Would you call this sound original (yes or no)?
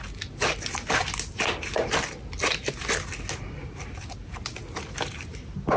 yes